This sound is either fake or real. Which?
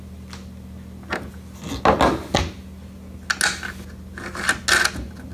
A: real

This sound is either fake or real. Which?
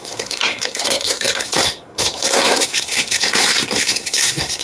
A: fake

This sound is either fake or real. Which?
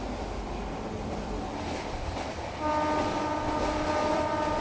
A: real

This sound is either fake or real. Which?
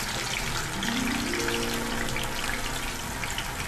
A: real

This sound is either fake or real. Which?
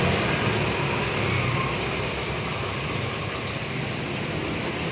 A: real